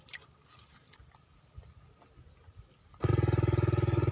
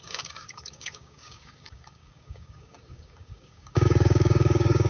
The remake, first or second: second